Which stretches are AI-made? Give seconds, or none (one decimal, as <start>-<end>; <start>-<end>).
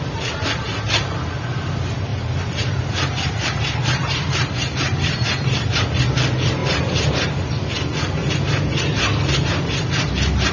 2.1-6.0; 6.6-7.7